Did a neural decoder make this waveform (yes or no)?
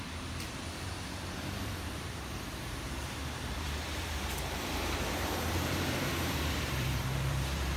yes